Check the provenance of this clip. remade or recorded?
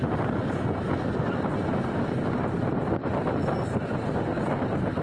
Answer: recorded